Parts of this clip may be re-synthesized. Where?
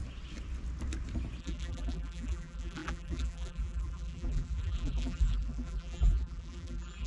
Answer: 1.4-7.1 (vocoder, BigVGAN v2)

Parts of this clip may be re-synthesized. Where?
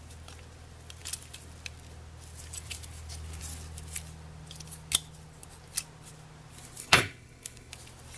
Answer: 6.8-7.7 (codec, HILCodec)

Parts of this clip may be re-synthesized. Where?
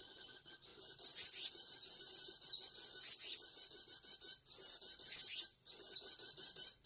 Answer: none